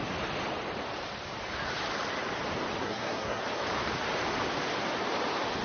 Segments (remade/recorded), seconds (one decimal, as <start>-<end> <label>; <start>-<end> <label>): 0.0-2.8 recorded; 2.8-3.4 remade; 3.4-5.6 recorded